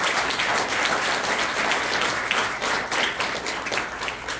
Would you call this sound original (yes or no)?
yes